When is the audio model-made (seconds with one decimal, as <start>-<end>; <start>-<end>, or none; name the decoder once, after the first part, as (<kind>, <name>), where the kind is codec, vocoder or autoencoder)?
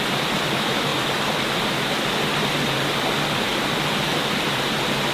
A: none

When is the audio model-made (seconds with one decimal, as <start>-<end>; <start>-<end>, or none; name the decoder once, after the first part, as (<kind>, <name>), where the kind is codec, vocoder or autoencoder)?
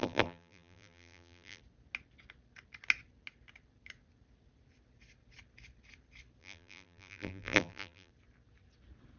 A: 0.0-1.6 (vocoder, BigVGAN v2); 6.4-8.1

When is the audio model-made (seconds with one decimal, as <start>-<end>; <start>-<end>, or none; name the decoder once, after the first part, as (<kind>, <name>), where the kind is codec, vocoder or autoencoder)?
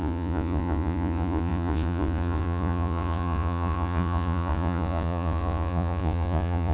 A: 0.0-6.7 (vocoder, Vocos)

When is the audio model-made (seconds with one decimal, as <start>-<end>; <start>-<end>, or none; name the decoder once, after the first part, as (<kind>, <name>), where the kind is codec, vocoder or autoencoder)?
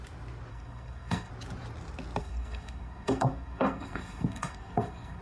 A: 0.5-1.3 (codec, SNAC); 2.2-5.2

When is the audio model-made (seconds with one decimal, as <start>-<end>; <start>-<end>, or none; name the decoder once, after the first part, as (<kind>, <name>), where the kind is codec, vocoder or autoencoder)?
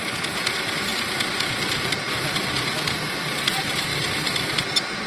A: 0.9-1.9 (vocoder, BigVGAN v2); 3.9-4.6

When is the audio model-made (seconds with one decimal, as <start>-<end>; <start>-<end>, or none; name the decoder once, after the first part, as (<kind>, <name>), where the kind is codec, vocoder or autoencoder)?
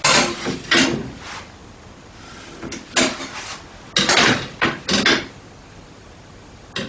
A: none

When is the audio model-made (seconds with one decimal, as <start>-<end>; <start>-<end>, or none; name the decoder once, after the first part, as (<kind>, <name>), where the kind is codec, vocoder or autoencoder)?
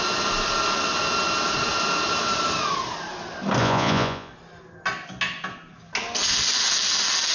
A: 3.6-4.3 (vocoder, Vocos)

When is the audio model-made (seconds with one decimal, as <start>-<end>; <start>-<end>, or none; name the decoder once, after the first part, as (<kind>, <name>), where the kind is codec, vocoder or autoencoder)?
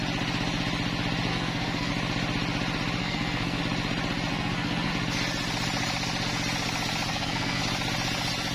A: 1.3-1.9 (codec, SNAC); 3.0-3.6; 4.3-4.9; 7.1-7.6